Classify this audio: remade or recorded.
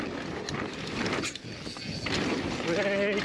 remade